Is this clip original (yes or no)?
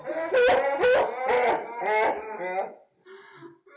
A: yes